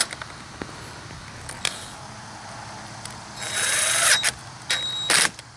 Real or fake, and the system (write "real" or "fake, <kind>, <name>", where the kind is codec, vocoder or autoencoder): real